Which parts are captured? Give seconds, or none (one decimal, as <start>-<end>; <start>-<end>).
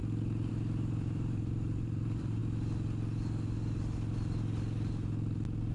0.0-0.5; 2.4-5.7